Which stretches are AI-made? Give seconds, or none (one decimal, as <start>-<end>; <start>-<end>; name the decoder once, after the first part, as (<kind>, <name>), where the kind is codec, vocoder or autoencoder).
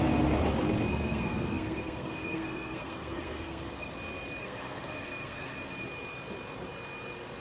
0.9-3.9 (codec, SNAC); 4.4-5.5